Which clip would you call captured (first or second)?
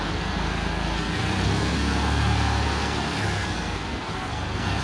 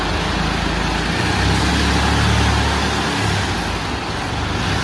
second